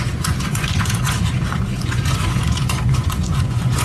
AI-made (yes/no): yes